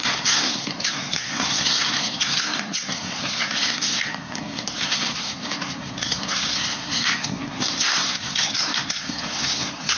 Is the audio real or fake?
fake